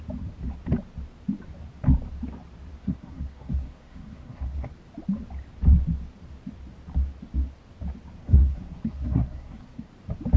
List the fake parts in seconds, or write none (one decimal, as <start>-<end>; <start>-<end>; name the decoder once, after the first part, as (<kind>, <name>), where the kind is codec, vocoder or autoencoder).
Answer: 2.8-4.7 (codec, SNAC); 8.2-9.9